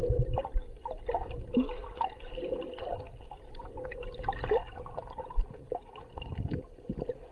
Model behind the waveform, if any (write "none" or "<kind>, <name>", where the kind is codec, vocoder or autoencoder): none